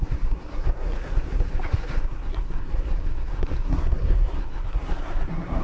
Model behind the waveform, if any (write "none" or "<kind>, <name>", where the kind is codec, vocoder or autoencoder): codec, SNAC